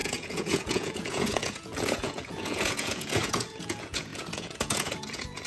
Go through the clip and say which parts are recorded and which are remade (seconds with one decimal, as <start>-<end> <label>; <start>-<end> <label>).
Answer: 0.0-5.5 remade